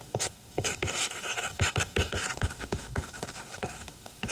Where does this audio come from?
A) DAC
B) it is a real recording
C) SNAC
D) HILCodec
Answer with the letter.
A